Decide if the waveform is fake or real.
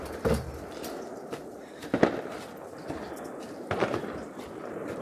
real